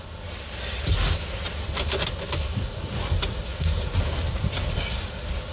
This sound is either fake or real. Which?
real